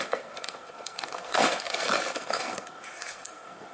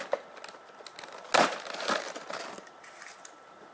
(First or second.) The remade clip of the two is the first